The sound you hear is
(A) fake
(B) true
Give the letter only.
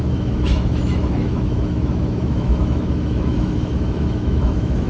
A